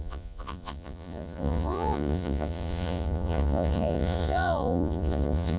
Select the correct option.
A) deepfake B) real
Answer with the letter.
A